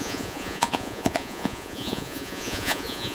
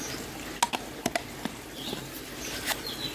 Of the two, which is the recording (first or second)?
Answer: second